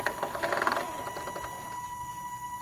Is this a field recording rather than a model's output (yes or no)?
yes